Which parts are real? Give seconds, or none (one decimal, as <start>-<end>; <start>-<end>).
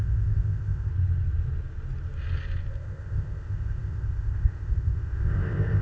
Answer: 0.9-2.7